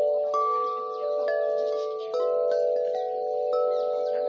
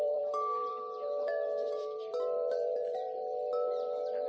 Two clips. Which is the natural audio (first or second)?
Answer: first